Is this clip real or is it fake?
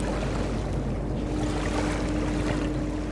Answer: real